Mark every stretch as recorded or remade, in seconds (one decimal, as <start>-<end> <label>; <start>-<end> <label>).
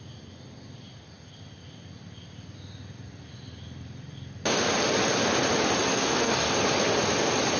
0.0-5.9 recorded; 5.9-6.5 remade; 6.5-7.6 recorded